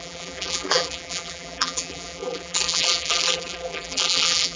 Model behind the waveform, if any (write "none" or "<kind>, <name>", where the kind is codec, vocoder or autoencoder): vocoder, BigVGAN v2